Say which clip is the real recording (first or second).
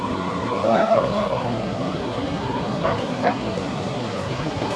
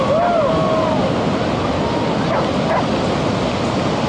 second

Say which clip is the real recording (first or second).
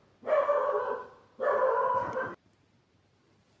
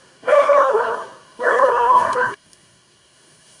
first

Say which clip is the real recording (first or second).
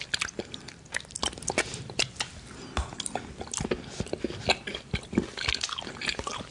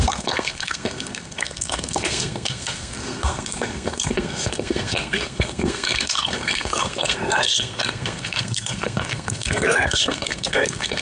first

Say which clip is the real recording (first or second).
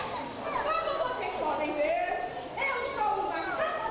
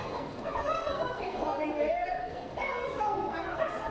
first